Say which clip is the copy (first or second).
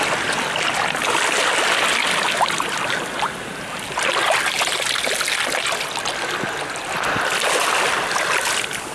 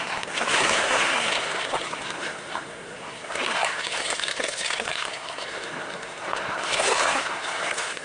second